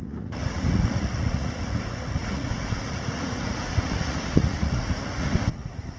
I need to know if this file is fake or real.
fake